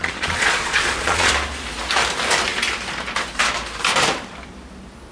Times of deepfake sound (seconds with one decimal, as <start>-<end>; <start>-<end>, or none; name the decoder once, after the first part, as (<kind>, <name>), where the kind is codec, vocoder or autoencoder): 0.0-1.3 (vocoder, Vocos)